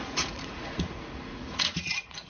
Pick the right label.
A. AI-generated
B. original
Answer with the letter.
A